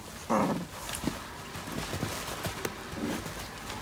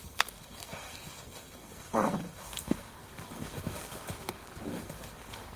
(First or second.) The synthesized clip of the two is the second